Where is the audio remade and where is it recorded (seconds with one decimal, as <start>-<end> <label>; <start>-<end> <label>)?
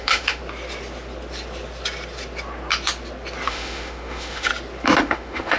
0.0-0.4 remade; 0.4-3.5 recorded; 3.5-4.5 remade; 4.5-5.0 recorded; 5.0-5.6 remade